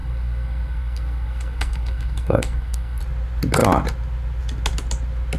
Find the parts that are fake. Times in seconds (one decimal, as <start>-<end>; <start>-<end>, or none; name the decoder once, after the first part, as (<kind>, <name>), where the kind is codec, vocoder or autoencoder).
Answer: 0.0-3.0 (codec, SNAC)